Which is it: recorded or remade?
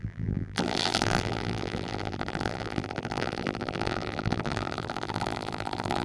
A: remade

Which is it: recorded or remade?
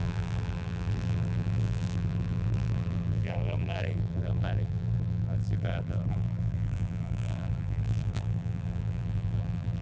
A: remade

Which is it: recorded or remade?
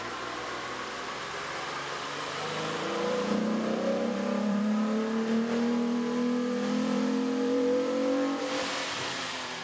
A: remade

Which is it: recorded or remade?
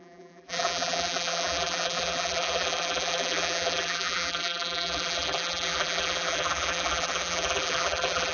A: remade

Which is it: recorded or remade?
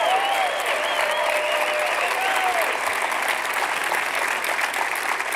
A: recorded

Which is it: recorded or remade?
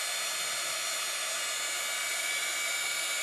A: recorded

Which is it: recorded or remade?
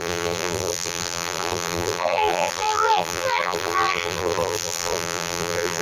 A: remade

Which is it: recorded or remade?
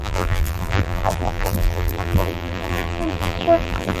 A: remade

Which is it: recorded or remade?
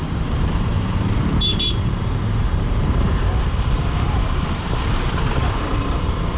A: remade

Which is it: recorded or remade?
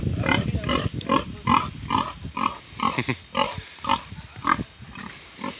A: recorded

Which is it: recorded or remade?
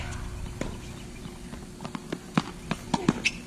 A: recorded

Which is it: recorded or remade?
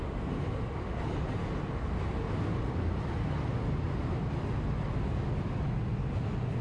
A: recorded